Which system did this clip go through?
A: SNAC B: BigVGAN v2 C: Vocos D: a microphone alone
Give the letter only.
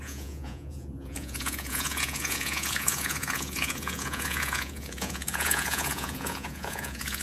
C